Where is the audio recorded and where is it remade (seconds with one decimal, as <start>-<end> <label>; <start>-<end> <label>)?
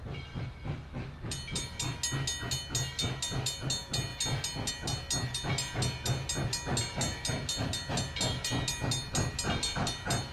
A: 0.0-10.3 recorded